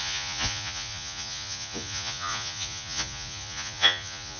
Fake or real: fake